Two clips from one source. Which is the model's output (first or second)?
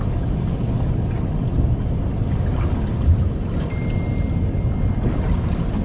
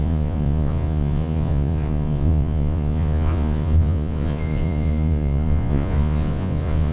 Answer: second